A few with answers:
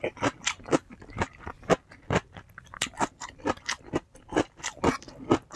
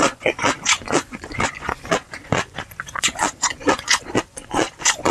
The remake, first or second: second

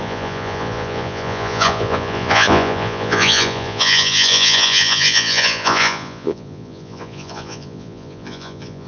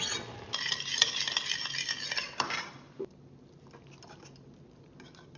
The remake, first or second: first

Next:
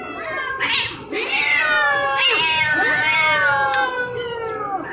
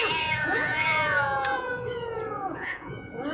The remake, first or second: second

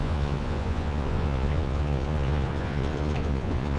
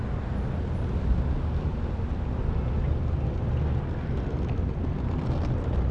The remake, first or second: first